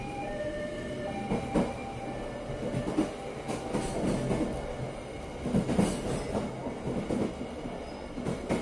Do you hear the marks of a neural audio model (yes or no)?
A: no